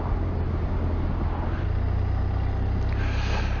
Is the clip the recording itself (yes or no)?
yes